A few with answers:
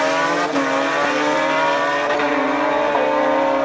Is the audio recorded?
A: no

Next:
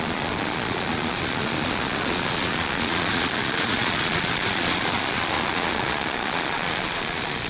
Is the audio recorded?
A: no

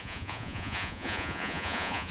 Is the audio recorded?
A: no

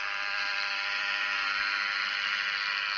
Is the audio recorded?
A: no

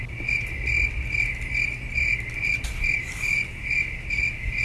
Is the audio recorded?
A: yes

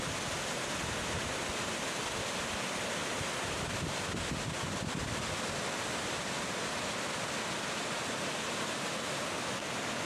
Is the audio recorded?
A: yes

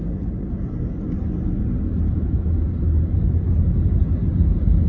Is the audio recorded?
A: yes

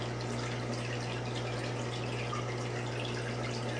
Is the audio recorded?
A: yes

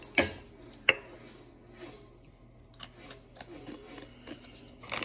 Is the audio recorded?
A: yes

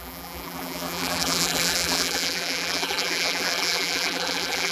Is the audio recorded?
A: no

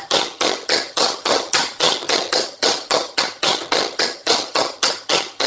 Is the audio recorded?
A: no